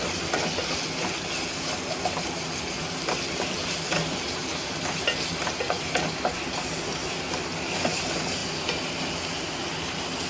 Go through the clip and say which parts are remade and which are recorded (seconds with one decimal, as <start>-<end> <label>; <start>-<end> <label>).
0.0-10.3 recorded